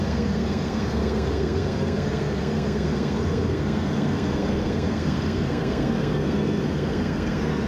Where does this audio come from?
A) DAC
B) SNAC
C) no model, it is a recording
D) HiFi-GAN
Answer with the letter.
B